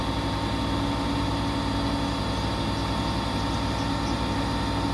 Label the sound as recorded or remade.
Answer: recorded